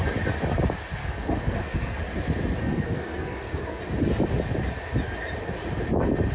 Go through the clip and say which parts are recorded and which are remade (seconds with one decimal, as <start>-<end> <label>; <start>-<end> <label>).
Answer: 0.0-1.0 recorded; 1.0-2.0 remade; 2.0-2.6 recorded; 2.6-3.8 remade; 3.8-6.3 recorded